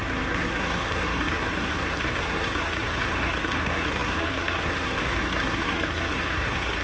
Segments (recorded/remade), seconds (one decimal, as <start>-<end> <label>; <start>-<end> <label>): 0.0-6.8 remade